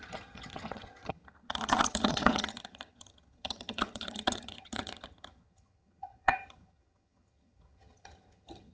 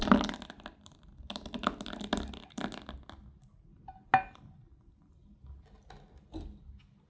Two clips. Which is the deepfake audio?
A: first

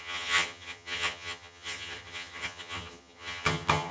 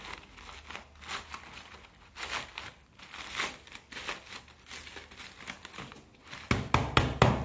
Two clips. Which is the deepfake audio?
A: first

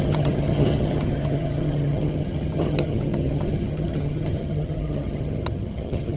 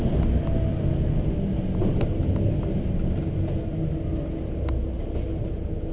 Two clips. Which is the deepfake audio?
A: first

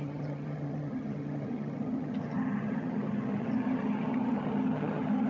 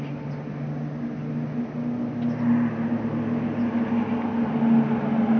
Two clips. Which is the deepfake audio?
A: first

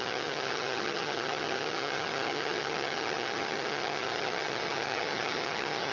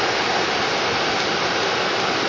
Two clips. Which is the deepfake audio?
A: first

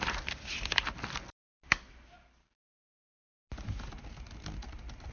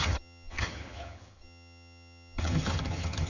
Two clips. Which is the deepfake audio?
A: second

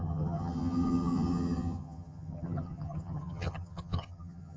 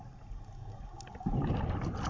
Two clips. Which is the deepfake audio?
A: first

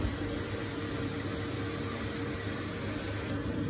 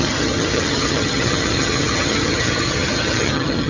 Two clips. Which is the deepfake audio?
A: second